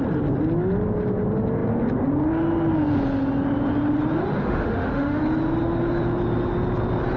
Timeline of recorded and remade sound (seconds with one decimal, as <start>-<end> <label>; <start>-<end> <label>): 0.0-4.4 recorded; 4.4-5.2 remade; 5.2-7.2 recorded